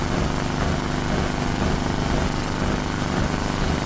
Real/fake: real